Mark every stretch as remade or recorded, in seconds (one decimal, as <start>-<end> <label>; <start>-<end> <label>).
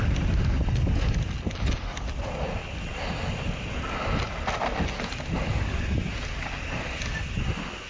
0.0-7.9 recorded